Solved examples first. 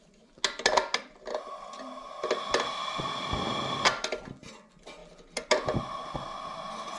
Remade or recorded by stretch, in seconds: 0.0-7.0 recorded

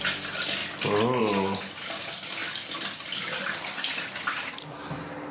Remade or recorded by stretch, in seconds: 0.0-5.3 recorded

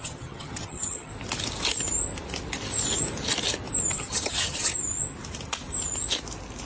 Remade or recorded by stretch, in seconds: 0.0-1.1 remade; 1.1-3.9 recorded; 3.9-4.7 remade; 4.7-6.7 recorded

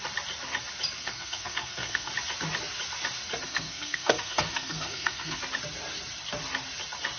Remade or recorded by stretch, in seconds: 0.0-1.0 recorded; 1.0-2.1 remade; 2.1-3.5 recorded; 3.5-5.4 remade; 5.4-7.2 recorded

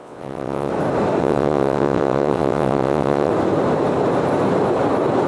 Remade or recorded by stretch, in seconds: 0.0-0.7 remade; 0.7-1.2 recorded; 1.2-3.3 remade; 3.3-5.3 recorded